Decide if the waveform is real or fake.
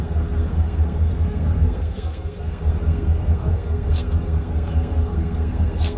fake